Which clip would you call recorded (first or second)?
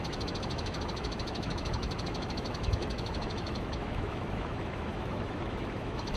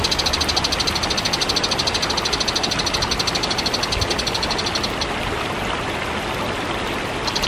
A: second